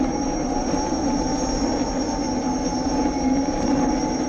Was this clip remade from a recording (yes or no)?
no